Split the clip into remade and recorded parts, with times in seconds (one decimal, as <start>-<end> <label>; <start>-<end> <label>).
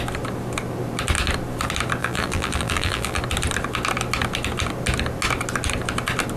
0.0-2.0 recorded; 2.0-3.2 remade; 3.2-6.4 recorded